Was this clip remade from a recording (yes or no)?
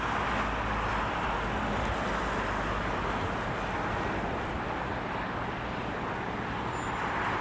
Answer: no